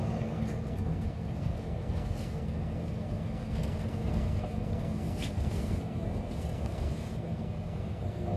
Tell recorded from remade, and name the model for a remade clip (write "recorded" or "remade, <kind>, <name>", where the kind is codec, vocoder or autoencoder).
remade, codec, SNAC